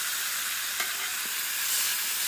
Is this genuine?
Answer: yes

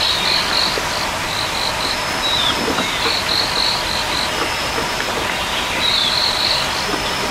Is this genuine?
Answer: yes